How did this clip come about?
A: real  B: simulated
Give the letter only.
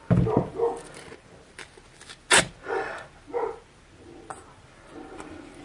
A